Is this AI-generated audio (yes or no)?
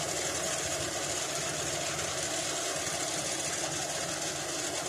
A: no